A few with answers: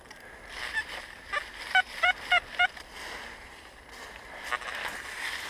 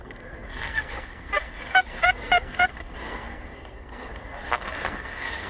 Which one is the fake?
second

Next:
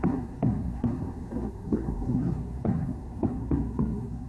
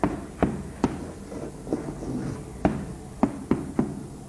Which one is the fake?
first